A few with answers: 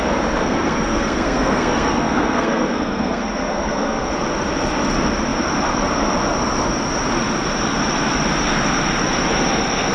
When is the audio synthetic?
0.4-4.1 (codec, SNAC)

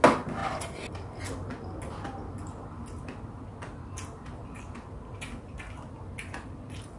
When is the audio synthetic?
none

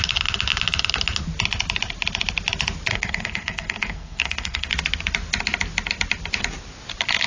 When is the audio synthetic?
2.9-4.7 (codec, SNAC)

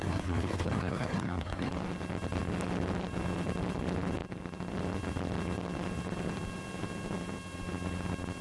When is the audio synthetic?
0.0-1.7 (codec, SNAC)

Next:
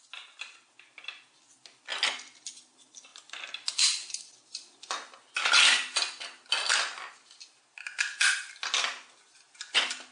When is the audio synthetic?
none

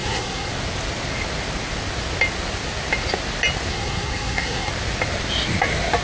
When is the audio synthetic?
0.0-0.5 (codec, SNAC); 3.7-4.7

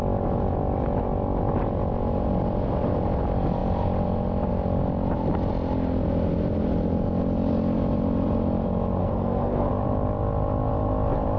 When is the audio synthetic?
9.0-9.7 (codec, SNAC)

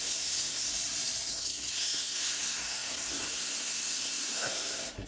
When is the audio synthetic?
0.0-0.7 (codec, SNAC); 1.3-5.1